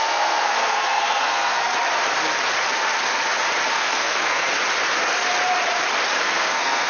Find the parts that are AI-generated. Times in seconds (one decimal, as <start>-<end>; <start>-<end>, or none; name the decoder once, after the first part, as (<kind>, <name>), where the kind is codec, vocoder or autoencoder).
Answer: 0.0-1.7 (codec, SNAC); 3.7-4.5; 6.2-6.9